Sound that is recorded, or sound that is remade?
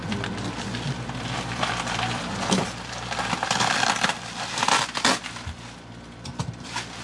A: remade